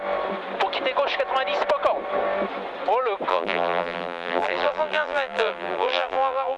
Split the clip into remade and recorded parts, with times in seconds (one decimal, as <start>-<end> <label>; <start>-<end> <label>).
0.0-3.3 recorded; 3.3-6.6 remade